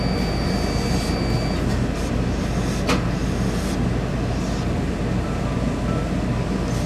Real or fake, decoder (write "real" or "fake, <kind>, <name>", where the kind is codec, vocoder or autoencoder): real